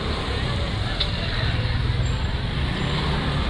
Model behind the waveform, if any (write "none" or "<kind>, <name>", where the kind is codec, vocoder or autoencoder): none